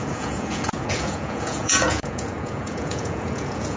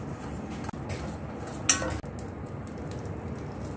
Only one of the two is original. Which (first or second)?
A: second